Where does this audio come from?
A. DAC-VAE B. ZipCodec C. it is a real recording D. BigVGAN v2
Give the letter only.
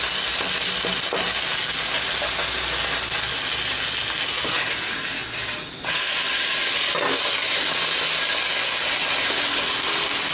C